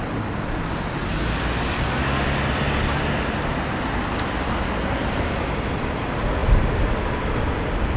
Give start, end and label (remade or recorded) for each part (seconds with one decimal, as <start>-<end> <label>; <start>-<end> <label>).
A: 0.0-8.0 recorded